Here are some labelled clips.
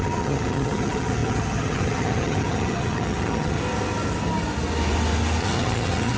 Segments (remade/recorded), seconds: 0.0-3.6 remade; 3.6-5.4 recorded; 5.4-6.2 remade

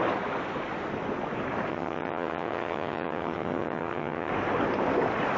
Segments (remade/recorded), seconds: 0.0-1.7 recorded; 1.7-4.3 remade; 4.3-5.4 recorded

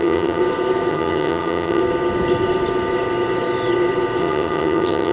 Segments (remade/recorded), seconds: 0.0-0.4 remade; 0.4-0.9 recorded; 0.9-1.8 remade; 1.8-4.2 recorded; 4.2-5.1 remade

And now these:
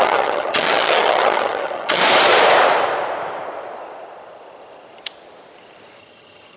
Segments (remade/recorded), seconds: 0.0-2.0 remade; 2.0-6.0 recorded; 6.0-6.6 remade

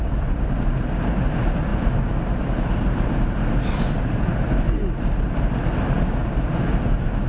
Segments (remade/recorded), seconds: 0.0-7.3 recorded